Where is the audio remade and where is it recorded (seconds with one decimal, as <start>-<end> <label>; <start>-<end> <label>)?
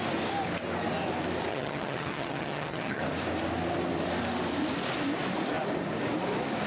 0.0-1.5 recorded; 1.5-3.0 remade; 3.0-6.7 recorded